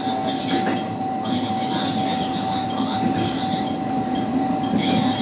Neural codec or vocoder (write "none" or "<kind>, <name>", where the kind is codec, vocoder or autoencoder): none